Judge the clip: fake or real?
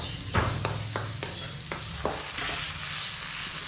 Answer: real